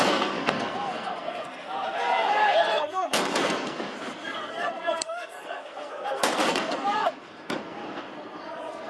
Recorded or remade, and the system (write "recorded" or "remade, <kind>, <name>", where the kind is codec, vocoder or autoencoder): remade, codec, SNAC